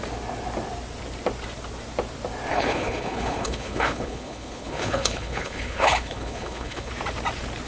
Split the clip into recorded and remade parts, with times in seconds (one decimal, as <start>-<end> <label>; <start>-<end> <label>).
0.0-2.5 recorded; 2.5-6.9 remade; 6.9-7.7 recorded